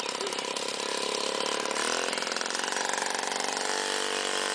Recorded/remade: recorded